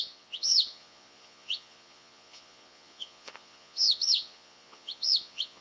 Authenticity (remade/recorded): remade